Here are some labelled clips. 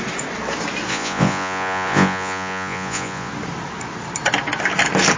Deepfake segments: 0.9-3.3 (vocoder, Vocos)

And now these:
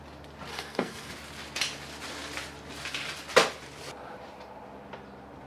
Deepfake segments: 0.5-1.1 (codec, SNAC)

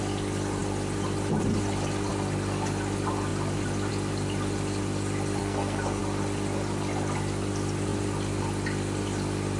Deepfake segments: 5.4-6.0 (codec, SNAC)

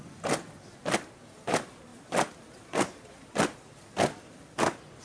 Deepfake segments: none

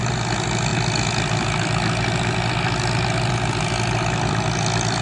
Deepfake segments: none